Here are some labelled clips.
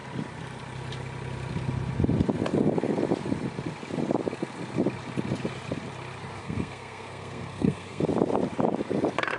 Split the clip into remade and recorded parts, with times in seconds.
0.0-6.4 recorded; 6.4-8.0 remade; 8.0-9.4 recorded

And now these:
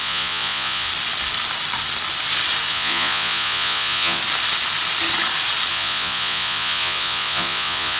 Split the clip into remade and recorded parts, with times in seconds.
0.0-0.9 remade; 0.9-2.7 recorded; 2.7-4.2 remade; 4.2-5.7 recorded; 5.7-8.0 remade